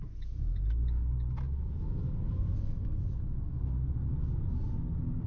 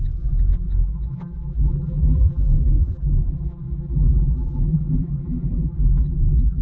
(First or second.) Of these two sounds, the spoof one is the second